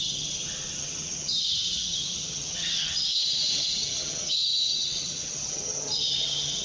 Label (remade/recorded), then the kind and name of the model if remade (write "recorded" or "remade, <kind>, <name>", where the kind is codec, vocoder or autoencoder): remade, vocoder, HiFi-GAN